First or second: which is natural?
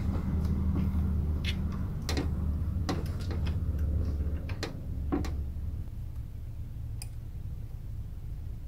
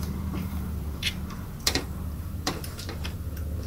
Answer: first